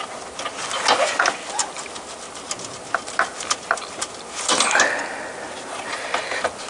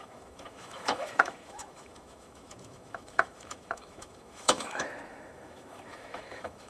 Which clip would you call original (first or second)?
first